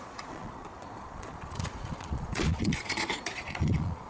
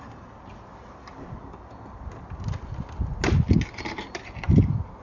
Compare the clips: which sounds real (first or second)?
second